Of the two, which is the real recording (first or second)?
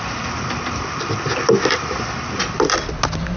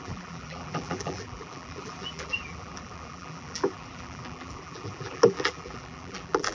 first